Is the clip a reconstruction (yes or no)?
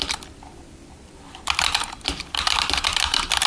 yes